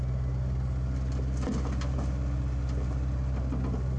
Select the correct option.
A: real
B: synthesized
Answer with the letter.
A